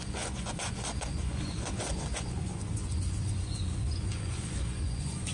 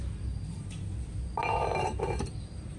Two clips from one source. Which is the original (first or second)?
second